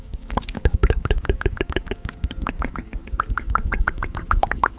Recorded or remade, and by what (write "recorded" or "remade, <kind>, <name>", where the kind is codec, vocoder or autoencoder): remade, codec, DAC